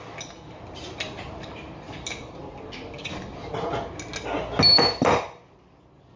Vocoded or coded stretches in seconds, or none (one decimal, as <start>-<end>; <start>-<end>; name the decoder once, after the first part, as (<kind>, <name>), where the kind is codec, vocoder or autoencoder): none